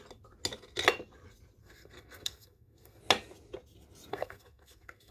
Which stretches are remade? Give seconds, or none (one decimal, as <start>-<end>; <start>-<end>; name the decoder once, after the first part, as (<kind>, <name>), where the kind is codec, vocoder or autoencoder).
1.6-3.0 (codec, SNAC); 4.1-5.1